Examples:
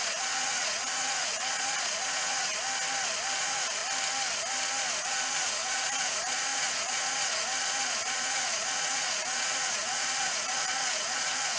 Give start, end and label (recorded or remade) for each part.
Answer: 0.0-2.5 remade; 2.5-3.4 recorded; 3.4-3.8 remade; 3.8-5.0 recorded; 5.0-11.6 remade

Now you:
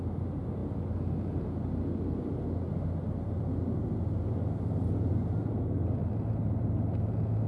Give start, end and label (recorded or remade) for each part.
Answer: 0.0-7.5 recorded

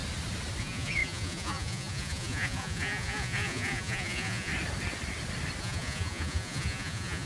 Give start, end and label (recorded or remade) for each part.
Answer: 0.0-0.6 recorded; 0.6-4.5 remade; 4.5-5.6 recorded; 5.6-7.3 remade

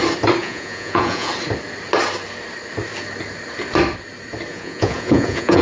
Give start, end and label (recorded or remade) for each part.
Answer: 0.0-0.4 recorded; 0.4-1.3 remade; 1.3-4.5 recorded; 4.5-5.6 remade

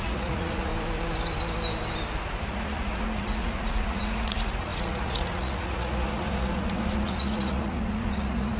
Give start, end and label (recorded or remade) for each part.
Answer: 0.0-0.7 remade; 0.7-2.4 recorded; 2.4-8.6 remade